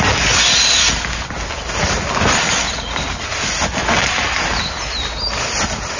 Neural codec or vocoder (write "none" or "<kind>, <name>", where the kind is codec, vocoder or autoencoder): none